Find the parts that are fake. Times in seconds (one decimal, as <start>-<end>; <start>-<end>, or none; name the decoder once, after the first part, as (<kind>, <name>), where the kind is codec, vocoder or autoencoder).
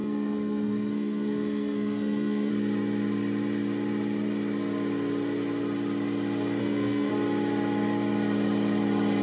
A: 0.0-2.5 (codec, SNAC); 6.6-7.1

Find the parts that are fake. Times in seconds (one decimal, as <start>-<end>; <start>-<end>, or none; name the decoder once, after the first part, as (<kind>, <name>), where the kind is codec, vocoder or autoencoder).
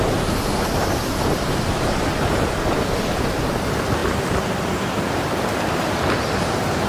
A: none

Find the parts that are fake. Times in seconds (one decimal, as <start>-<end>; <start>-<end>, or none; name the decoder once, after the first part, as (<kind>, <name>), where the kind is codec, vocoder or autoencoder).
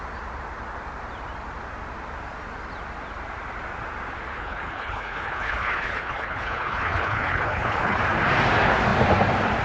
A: 4.3-8.0 (codec, HILCodec)